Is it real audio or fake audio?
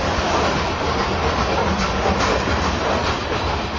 real